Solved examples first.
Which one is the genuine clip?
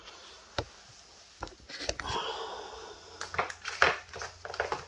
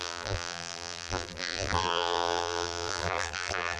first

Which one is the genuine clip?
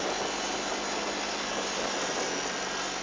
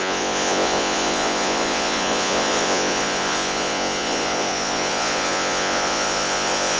first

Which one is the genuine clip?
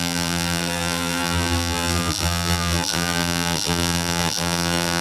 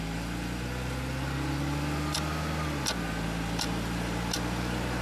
second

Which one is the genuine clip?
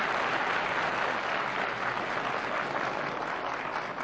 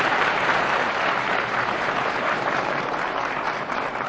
first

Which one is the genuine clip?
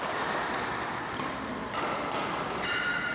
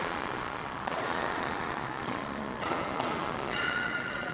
first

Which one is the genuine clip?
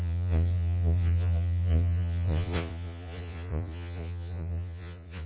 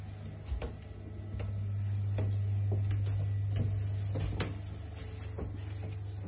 second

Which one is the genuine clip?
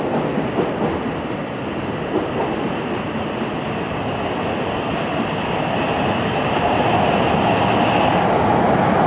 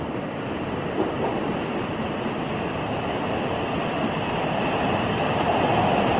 first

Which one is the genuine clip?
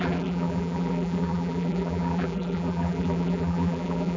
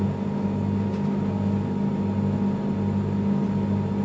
second